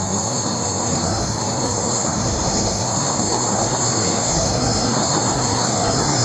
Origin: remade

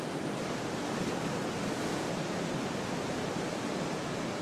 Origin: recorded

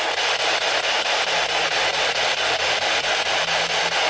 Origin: recorded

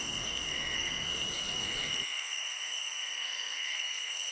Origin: remade